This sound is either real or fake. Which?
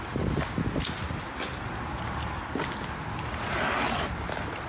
real